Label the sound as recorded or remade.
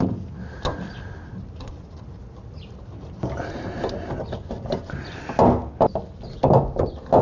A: recorded